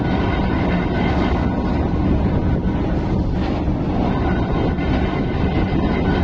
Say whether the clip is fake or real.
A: real